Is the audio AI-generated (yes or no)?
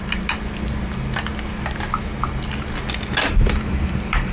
no